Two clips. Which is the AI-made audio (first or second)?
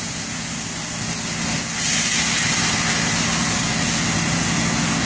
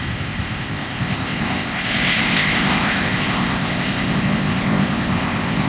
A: second